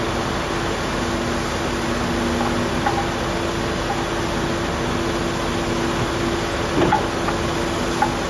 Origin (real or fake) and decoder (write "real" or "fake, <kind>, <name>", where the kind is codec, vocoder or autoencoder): real